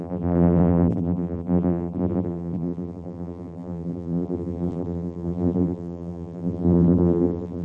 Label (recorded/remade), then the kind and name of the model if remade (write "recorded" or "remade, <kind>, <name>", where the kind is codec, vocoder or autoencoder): remade, vocoder, BigVGAN v2